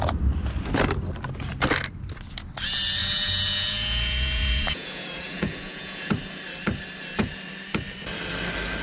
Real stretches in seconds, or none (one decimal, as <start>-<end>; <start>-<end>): 0.0-3.0; 6.1-8.8